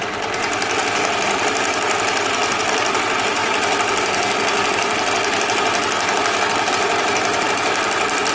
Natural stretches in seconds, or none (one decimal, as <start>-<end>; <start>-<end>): 0.0-0.8; 3.4-6.7